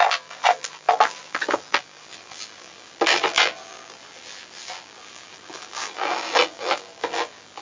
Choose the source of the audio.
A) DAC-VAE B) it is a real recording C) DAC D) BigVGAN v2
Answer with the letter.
D